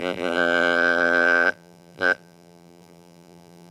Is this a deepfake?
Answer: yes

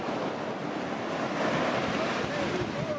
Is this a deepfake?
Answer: no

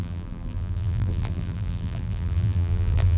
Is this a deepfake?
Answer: yes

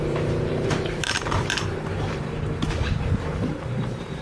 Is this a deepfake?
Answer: yes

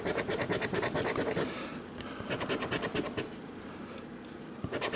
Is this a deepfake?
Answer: no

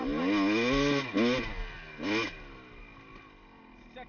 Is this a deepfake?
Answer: no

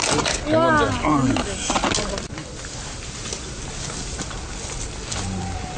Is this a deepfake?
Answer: no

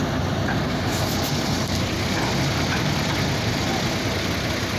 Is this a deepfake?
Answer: no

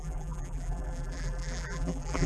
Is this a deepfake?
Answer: yes